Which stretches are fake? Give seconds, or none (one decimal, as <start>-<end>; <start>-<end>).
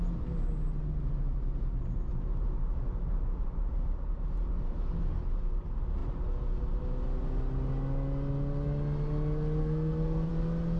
9.6-10.3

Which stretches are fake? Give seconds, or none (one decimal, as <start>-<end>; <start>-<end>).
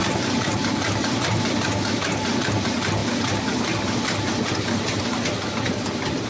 none